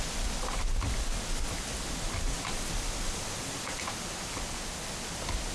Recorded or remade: recorded